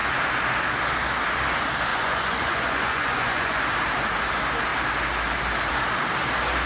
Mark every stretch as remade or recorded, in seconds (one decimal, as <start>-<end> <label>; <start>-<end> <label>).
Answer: 0.0-1.9 recorded; 1.9-3.6 remade; 3.6-6.7 recorded

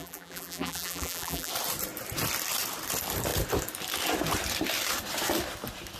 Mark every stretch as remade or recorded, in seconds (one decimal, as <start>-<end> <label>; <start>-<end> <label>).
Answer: 0.0-1.5 remade; 1.5-6.0 recorded

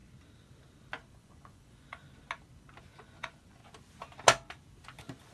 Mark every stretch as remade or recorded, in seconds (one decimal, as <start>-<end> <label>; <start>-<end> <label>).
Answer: 0.0-1.1 recorded; 1.1-2.0 remade; 2.0-2.8 recorded; 2.8-3.6 remade; 3.6-5.3 recorded

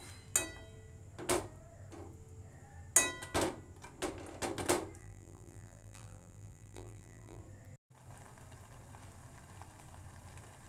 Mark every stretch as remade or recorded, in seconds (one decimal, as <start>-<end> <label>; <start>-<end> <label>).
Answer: 0.0-5.0 recorded; 5.0-7.4 remade; 7.4-10.7 recorded